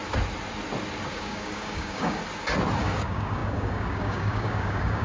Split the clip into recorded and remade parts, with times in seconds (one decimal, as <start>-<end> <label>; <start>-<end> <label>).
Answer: 0.0-1.1 recorded; 1.1-2.2 remade; 2.2-2.8 recorded; 2.8-5.0 remade